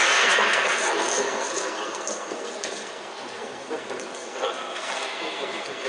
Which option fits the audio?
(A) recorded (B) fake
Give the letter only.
B